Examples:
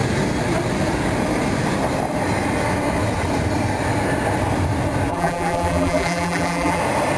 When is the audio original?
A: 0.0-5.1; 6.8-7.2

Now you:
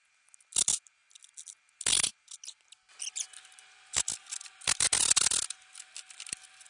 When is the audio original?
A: 0.0-6.7

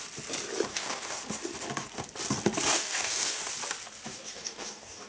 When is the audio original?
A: 0.0-0.7; 1.2-2.7; 3.5-4.1

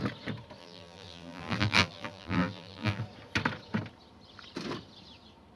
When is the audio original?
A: 0.0-0.6; 3.0-5.6

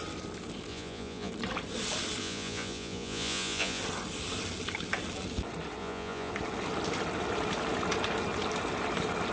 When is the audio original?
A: 0.0-0.7; 1.3-2.2; 3.8-5.8; 6.3-9.3